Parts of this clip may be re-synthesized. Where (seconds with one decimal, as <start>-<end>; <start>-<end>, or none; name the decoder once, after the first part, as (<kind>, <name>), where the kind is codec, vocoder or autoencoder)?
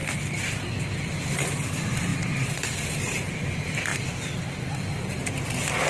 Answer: 0.7-5.9 (vocoder, BigVGAN v2)